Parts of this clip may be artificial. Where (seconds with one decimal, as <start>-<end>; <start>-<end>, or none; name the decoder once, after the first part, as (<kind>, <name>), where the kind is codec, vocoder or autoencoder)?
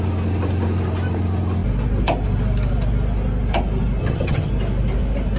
4.0-4.5 (vocoder, HiFi-GAN)